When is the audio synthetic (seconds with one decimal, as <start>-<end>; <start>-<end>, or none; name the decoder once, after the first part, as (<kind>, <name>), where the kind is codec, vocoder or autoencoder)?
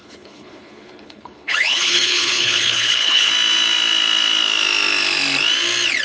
0.0-3.3 (codec, HILCodec)